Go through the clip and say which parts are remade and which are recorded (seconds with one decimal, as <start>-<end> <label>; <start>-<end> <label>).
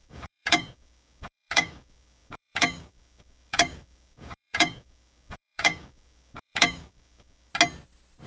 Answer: 0.0-7.5 remade; 7.5-8.3 recorded